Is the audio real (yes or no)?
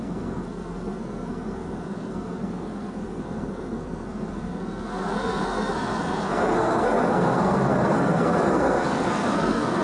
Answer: no